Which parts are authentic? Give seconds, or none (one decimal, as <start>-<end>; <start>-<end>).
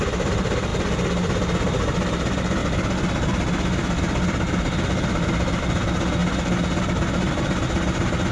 0.0-8.3